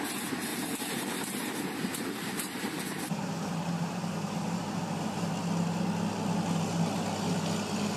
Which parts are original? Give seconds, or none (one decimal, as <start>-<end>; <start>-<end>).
0.0-0.5; 5.3-8.0